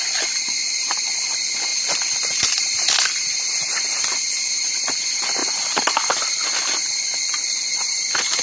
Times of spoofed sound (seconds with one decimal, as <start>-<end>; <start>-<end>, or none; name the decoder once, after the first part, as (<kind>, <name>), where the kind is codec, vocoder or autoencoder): none